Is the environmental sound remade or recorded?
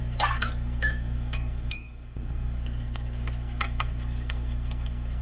remade